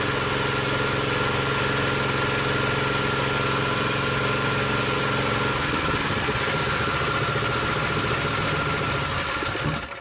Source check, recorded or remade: recorded